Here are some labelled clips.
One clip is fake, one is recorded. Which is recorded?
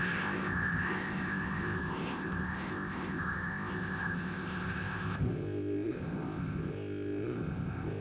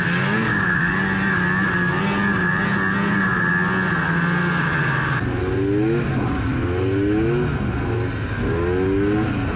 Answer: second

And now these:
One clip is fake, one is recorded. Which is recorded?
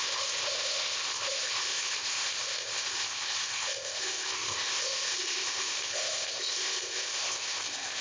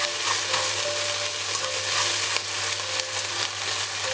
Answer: second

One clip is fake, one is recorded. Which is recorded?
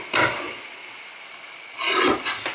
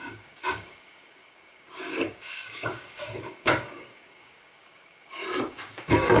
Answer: first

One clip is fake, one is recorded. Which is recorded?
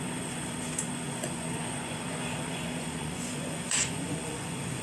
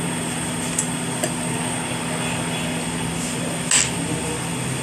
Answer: second